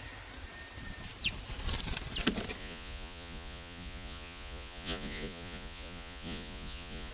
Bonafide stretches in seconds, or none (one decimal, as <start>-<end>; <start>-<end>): 0.0-2.6